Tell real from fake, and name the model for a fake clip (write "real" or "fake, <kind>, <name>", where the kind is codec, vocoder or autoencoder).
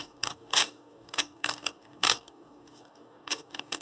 fake, codec, DAC